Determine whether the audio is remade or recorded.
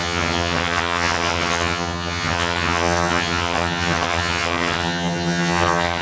remade